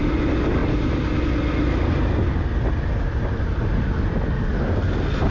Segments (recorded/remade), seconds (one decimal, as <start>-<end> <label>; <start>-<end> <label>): 0.0-5.3 recorded